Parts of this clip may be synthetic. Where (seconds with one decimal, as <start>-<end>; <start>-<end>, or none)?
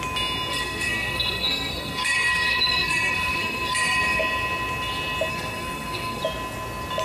0.5-4.2; 5.3-6.2